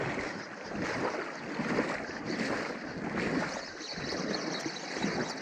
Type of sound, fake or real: real